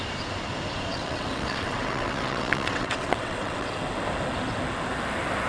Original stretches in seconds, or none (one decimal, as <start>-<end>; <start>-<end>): 0.0-0.9; 3.7-5.5